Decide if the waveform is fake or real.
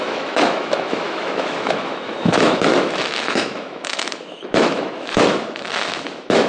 fake